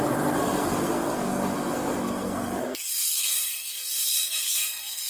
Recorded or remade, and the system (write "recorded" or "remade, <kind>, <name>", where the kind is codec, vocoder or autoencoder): remade, codec, SNAC